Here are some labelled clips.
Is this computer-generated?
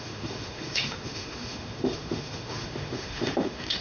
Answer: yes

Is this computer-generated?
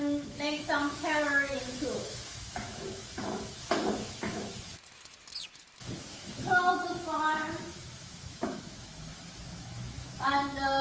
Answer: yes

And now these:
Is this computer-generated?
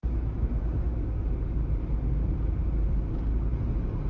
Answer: no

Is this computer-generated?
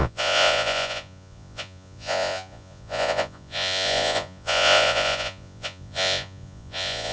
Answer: yes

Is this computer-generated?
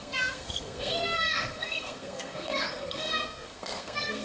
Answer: yes